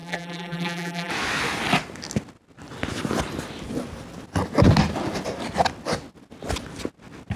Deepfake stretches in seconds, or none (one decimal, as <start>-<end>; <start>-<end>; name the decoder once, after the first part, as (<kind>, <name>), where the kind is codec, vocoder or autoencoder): 0.0-1.1 (vocoder, BigVGAN v2)

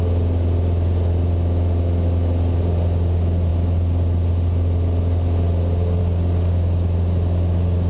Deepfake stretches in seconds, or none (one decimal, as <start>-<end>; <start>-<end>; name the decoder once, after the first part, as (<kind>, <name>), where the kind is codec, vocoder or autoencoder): none